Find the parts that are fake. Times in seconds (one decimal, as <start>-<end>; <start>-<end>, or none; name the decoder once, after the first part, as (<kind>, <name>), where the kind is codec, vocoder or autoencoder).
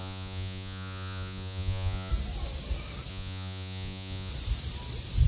0.0-2.1 (vocoder, Vocos); 3.1-4.3